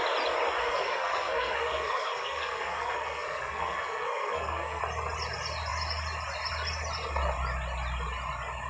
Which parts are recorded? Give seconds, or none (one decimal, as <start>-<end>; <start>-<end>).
0.0-0.6; 4.8-8.7